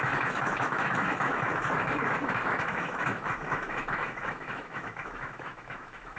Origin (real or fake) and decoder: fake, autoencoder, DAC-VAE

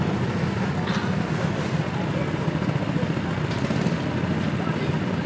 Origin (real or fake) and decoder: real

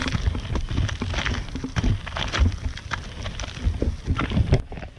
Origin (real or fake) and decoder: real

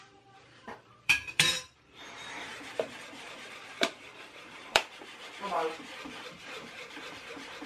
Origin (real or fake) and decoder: fake, vocoder, BigVGAN v2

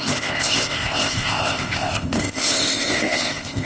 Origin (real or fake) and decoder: fake, codec, ZipCodec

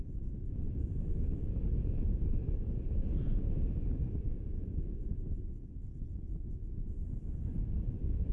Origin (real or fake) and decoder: real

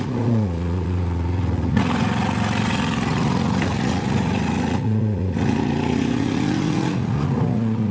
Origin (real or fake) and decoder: fake, vocoder, Vocos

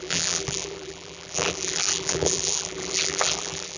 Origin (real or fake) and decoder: fake, vocoder, BigVGAN v2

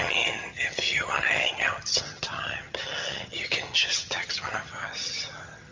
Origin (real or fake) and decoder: fake, vocoder, HiFi-GAN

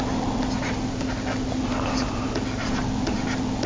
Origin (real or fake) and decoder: real